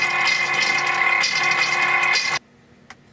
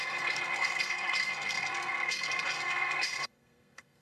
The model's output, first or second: second